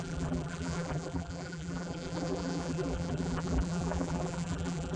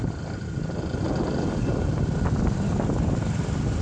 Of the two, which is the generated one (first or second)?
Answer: first